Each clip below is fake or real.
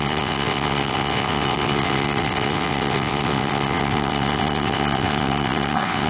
fake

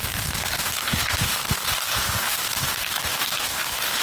fake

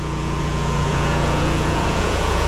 fake